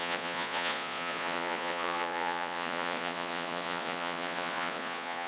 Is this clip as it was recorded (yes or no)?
no